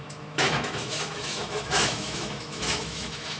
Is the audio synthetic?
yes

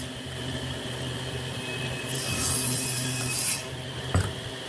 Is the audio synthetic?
no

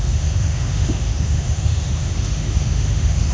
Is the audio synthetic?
yes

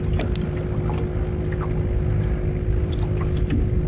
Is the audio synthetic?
no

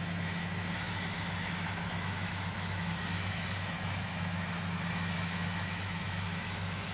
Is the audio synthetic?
yes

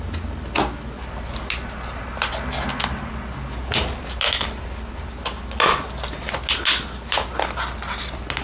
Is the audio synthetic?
no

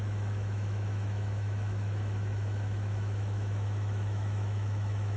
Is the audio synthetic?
yes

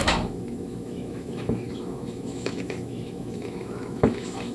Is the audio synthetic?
yes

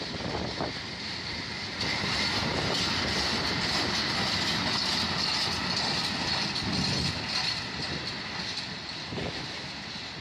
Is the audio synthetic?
no